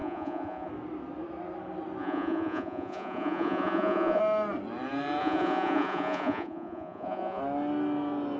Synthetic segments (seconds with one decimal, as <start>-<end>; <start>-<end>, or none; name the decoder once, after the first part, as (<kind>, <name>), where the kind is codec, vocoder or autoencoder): 0.0-0.7 (vocoder, Vocos); 2.0-4.2; 5.2-7.4